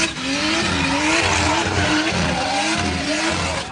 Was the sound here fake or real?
real